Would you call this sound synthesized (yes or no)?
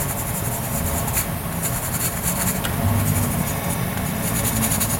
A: no